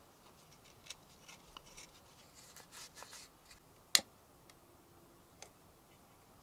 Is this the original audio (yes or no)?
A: yes